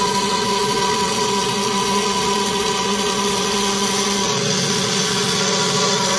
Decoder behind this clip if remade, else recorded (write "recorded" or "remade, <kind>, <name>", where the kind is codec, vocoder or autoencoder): remade, vocoder, Vocos